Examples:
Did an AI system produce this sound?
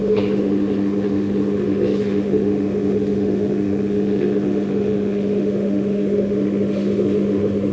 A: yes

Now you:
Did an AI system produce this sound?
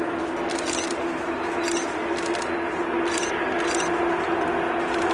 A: no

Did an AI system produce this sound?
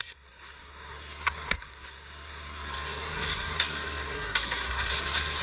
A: yes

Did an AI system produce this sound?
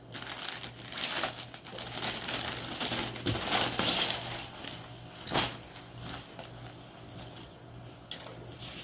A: no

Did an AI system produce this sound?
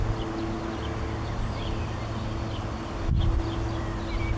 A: no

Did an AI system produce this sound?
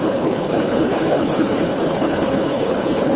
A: yes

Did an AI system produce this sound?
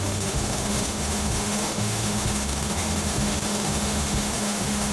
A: yes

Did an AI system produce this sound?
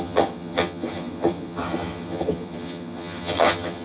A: yes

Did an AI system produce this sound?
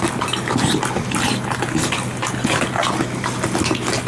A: no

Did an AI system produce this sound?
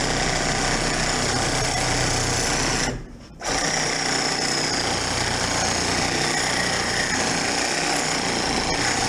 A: no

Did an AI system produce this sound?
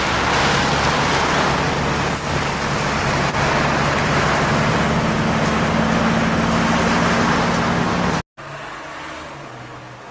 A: no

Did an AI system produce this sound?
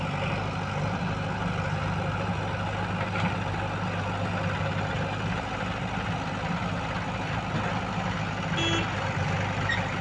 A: no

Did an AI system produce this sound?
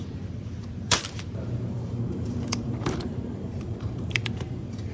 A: yes